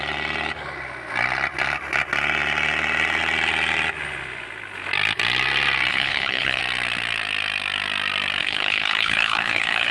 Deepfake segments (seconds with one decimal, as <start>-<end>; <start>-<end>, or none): 5.9-6.6; 8.4-9.9